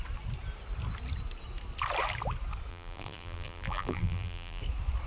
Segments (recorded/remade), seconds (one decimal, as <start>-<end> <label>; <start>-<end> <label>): 0.0-2.7 recorded; 2.7-4.6 remade; 4.6-5.1 recorded

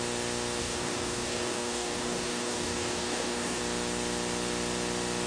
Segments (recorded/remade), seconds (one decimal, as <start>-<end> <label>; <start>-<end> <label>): 0.0-0.6 recorded; 0.6-3.6 remade; 3.6-5.3 recorded

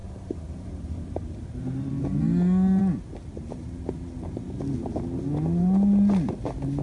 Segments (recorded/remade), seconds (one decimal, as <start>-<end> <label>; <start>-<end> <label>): 0.0-1.9 remade; 1.9-6.8 recorded

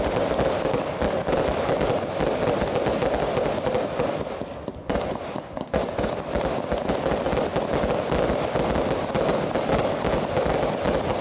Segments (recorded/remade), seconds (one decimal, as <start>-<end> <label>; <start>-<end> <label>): 0.0-4.8 recorded; 4.8-6.1 remade; 6.1-11.2 recorded

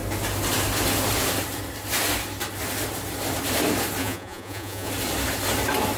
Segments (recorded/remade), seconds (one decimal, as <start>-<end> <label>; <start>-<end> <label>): 0.0-4.0 recorded; 4.0-4.9 remade; 4.9-6.0 recorded

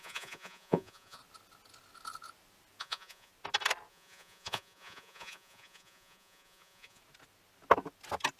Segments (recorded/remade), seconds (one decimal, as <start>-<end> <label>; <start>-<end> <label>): 0.0-1.2 remade; 1.2-2.8 recorded; 2.8-3.3 remade; 3.3-3.9 recorded; 3.9-7.0 remade; 7.0-8.4 recorded